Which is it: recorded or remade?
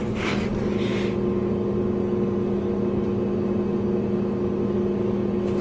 recorded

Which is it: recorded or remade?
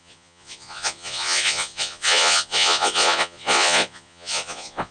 remade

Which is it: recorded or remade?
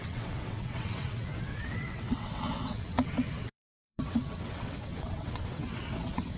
remade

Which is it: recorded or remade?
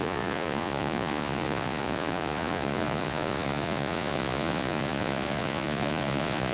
remade